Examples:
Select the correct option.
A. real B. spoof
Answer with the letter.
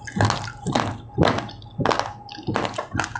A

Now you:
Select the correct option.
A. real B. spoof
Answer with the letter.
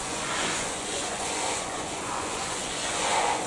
B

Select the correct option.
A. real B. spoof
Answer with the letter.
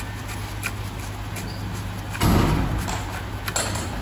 A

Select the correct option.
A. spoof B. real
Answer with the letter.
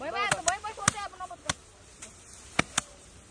B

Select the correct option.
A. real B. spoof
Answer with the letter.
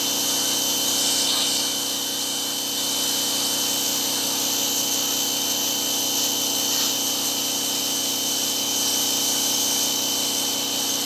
A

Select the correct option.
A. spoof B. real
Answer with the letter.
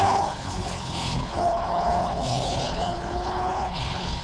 A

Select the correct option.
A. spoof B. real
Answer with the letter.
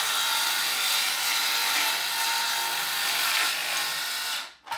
B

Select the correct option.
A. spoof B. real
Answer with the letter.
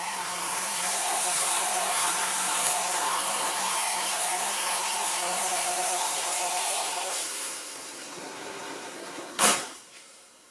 A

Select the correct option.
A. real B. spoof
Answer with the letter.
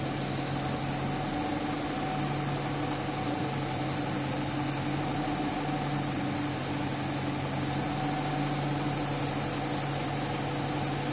A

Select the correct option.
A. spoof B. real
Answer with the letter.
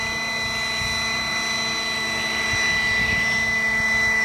B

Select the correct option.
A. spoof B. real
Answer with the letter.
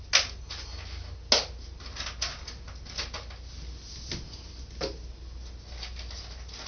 B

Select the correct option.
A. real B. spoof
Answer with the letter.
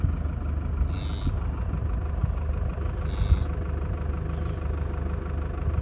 A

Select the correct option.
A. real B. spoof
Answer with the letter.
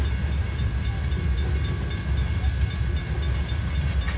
A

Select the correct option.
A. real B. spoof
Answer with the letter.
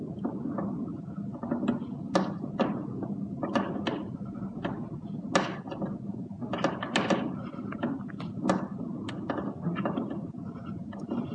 A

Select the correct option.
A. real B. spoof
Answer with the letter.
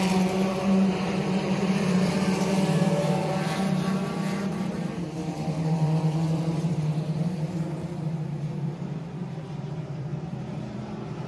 B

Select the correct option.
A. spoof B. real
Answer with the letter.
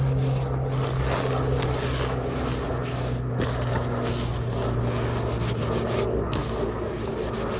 B